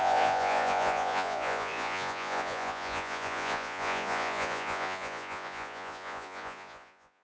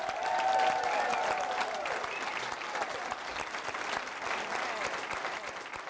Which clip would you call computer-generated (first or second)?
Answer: first